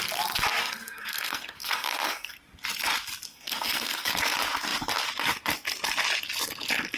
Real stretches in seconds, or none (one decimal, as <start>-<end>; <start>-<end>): 0.0-0.6; 2.3-3.3; 4.2-7.0